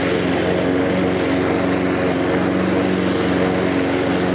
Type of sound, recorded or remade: recorded